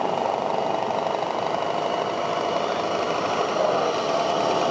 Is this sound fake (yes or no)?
no